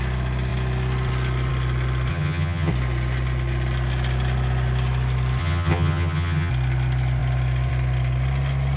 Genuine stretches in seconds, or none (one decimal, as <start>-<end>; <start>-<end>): 0.0-2.1; 2.7-5.4; 6.5-8.8